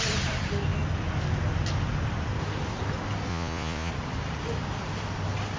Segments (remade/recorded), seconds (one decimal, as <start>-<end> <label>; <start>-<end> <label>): 0.0-3.3 recorded; 3.3-3.9 remade; 3.9-5.6 recorded